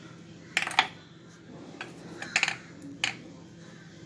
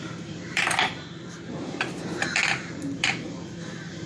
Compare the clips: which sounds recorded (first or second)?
first